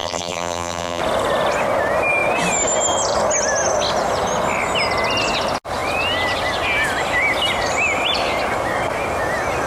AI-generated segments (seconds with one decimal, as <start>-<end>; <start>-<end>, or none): 0.0-1.0